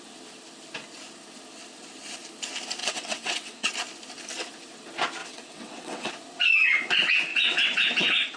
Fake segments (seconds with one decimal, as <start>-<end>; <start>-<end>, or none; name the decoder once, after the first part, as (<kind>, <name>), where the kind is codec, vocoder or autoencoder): 2.8-3.7 (vocoder, WaveNeXt); 5.2-6.1; 7.3-8.4